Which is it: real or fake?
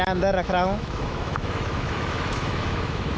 fake